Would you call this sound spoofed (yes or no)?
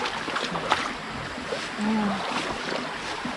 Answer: no